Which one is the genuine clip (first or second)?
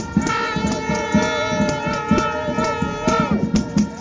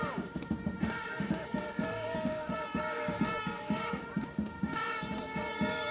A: first